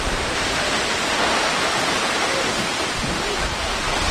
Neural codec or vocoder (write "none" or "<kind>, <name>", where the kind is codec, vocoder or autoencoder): none